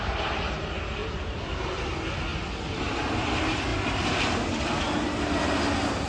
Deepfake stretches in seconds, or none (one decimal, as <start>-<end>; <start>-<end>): none